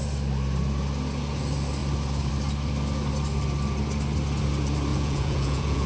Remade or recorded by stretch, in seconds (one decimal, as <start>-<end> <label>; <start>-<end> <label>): 0.0-4.9 recorded; 4.9-5.9 remade